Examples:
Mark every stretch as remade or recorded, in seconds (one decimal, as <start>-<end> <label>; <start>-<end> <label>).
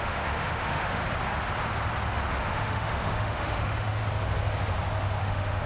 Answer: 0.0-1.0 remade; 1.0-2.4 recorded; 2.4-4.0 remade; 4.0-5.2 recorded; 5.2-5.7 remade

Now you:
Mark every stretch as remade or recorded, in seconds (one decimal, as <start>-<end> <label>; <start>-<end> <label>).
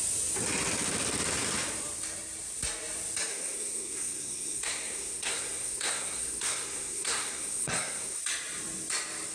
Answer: 0.0-3.3 recorded; 3.3-8.2 remade; 8.2-9.3 recorded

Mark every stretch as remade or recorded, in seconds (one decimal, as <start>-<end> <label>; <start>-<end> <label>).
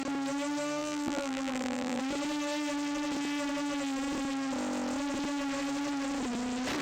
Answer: 0.0-0.8 recorded; 0.8-2.0 remade; 2.0-6.8 recorded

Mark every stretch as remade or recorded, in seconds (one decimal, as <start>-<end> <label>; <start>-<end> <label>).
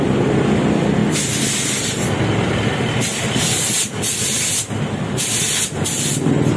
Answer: 0.0-6.6 recorded